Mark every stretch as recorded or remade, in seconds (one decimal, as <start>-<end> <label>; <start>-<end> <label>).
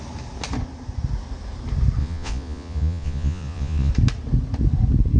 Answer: 0.0-2.0 recorded; 2.0-3.9 remade; 3.9-5.2 recorded